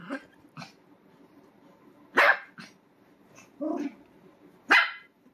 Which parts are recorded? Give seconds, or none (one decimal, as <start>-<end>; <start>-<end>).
0.0-5.3